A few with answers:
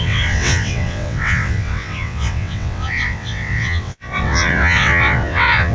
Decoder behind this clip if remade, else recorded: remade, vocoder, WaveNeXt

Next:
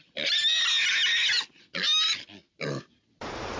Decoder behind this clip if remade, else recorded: recorded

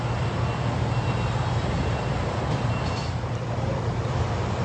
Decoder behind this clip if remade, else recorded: recorded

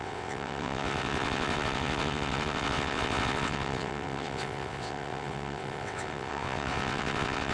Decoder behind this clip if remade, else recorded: remade, vocoder, WaveNeXt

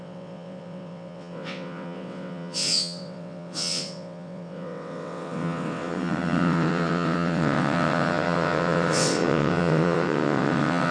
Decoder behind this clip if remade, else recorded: remade, vocoder, WaveNeXt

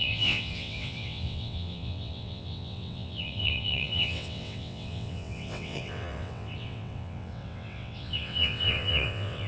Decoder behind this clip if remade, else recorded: remade, vocoder, WaveNeXt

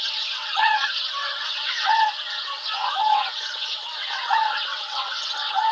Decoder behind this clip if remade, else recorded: remade, vocoder, WaveNeXt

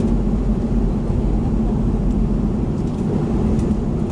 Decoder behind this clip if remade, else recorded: recorded